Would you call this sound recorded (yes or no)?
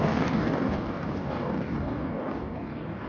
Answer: no